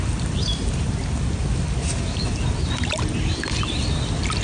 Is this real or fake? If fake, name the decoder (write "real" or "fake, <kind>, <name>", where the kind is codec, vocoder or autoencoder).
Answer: real